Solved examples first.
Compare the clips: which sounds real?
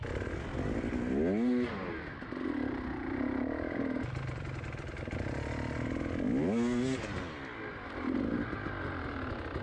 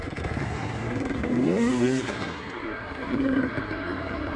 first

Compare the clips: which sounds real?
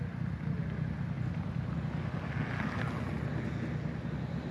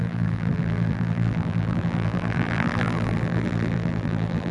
first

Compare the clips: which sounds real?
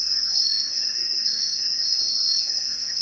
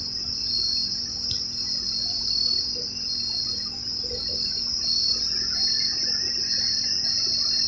second